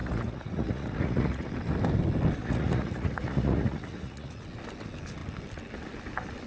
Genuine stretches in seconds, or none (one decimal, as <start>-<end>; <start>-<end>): 1.5-2.4; 4.3-6.5